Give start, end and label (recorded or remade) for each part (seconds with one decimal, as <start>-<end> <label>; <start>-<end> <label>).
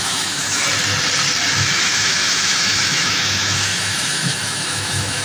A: 0.0-0.6 remade; 0.6-1.5 recorded; 1.5-5.2 remade